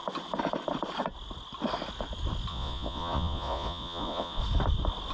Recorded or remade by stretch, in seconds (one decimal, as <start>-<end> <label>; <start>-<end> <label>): 0.0-2.5 recorded; 2.5-4.4 remade; 4.4-5.1 recorded